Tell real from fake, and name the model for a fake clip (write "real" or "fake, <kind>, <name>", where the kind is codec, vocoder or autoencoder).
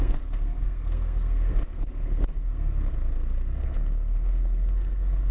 fake, codec, SNAC